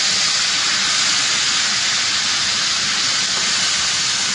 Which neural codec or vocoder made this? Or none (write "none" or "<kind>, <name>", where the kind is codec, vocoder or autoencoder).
none